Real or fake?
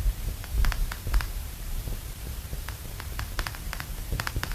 fake